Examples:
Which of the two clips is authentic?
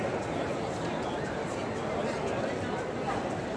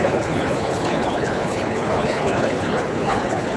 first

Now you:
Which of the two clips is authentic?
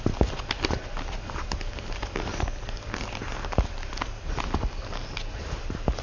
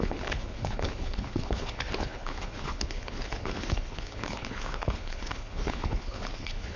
first